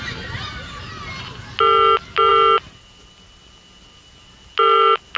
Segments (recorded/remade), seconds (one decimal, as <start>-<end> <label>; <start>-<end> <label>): 0.0-5.2 recorded